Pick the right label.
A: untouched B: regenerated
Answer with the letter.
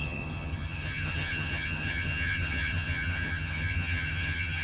B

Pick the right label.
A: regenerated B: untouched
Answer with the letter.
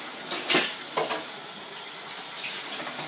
B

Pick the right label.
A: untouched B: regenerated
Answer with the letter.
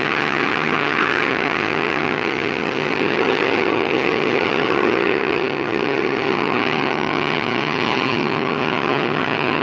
B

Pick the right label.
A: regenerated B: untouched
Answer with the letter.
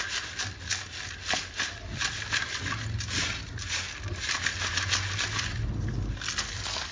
B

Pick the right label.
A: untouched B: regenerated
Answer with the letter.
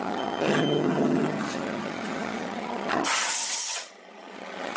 B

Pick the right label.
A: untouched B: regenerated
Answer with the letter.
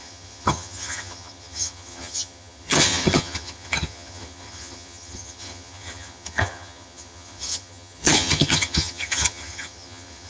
B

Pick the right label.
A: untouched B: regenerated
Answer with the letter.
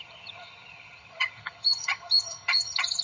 B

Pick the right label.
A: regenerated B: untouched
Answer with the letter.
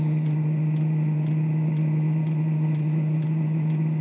B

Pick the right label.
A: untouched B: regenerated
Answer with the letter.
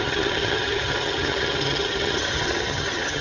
B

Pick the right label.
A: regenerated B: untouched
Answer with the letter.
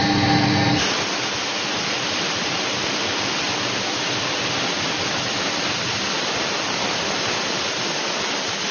B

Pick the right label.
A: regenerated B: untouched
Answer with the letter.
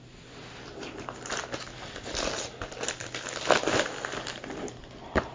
B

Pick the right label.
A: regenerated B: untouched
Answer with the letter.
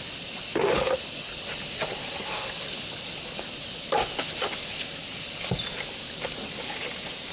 B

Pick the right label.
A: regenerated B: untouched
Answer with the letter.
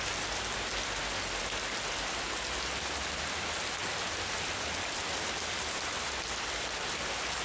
B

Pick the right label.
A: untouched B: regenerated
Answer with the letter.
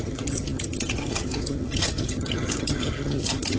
B